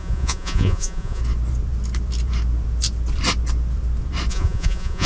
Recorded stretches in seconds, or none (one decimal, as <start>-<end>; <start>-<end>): 1.2-4.3